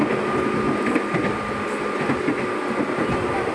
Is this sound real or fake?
real